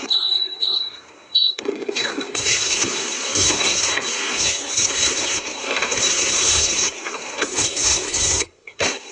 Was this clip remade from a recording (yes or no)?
yes